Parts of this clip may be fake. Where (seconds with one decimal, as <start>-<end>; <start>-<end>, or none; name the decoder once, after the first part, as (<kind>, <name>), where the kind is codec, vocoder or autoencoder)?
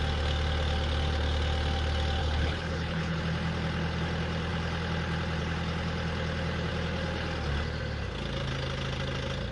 2.2-3.2 (codec, HILCodec)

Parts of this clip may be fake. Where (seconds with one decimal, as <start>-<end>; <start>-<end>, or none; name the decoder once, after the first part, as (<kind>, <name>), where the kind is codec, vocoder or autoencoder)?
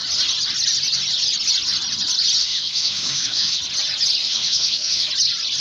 2.4-3.6 (autoencoder, DAC-VAE); 4.2-5.1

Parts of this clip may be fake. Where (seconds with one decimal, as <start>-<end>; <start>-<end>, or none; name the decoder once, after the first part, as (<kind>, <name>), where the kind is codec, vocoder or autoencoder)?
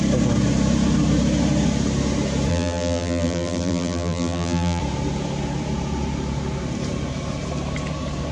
2.5-4.8 (vocoder, BigVGAN v2)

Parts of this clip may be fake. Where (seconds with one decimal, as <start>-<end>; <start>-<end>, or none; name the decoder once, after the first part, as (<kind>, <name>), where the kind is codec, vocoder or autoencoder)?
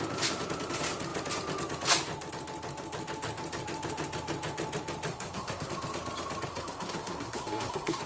5.1-5.7 (codec, SNAC); 6.5-8.1